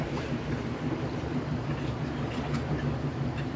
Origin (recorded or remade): remade